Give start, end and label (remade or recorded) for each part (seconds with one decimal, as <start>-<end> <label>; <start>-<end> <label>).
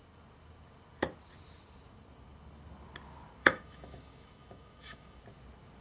0.0-3.4 recorded; 3.4-5.2 remade; 5.2-5.8 recorded